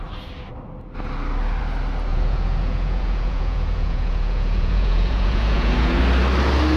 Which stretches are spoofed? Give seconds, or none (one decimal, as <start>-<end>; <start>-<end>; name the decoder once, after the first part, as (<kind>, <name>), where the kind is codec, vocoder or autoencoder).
2.1-6.0 (vocoder, Vocos)